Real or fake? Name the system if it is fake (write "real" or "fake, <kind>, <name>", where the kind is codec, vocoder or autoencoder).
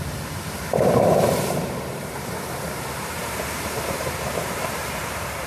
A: fake, vocoder, BigVGAN v2